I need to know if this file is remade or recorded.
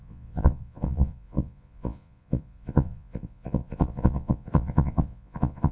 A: remade